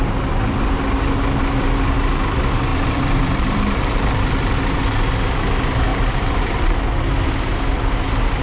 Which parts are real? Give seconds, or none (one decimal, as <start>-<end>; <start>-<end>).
0.0-2.7; 4.8-5.9; 6.8-8.4